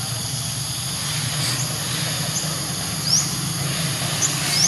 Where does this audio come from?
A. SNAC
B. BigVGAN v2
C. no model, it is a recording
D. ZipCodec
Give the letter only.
C